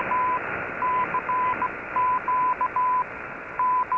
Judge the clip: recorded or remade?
recorded